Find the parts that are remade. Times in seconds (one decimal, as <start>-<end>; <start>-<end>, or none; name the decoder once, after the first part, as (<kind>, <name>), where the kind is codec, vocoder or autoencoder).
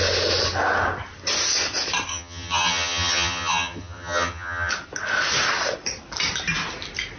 2.1-4.7 (vocoder, HiFi-GAN)